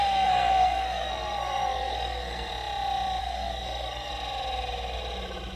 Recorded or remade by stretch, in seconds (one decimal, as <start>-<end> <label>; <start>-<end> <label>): 0.0-2.5 remade; 2.5-3.2 recorded; 3.2-4.1 remade; 4.1-5.6 recorded